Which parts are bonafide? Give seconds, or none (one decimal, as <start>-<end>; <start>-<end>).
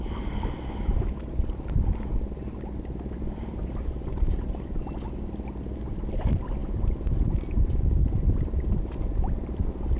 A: 0.0-10.0